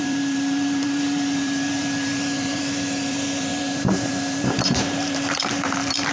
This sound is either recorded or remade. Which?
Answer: remade